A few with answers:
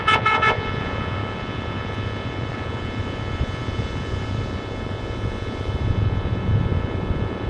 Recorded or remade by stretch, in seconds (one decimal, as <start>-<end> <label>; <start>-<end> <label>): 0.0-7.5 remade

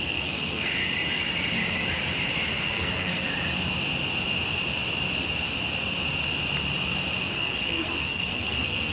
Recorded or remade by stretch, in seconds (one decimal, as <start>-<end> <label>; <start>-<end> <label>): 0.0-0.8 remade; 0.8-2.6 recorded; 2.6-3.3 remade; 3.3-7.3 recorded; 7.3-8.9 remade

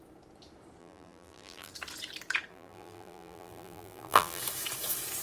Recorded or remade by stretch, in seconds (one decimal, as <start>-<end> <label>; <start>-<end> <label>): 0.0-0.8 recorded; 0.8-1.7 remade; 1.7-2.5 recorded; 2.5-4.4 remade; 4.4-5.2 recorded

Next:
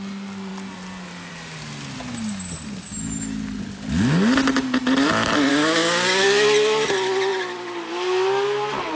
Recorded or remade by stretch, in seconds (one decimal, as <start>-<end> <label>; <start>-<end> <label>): 0.0-5.5 recorded; 5.5-6.2 remade; 6.2-9.0 recorded

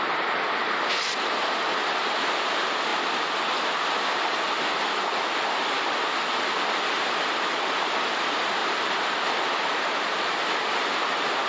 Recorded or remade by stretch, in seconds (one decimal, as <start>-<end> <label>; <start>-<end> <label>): 0.0-8.6 recorded; 8.6-9.4 remade; 9.4-11.5 recorded

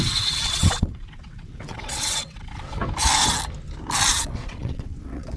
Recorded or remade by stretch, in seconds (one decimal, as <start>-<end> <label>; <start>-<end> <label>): 0.0-2.8 remade; 2.8-4.1 recorded; 4.1-5.4 remade